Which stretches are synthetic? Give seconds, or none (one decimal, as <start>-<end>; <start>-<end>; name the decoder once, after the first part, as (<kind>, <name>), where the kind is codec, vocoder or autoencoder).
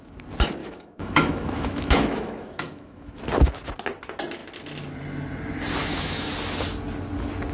0.6-3.2 (autoencoder, DAC-VAE); 5.8-6.3